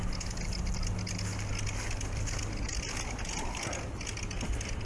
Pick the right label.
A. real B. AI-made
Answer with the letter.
A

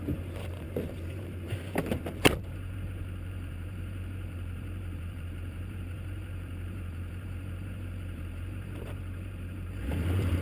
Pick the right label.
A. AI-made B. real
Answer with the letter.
A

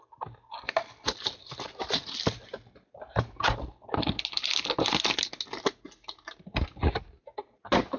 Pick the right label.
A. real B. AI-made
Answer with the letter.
A